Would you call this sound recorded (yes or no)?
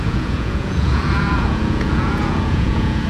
no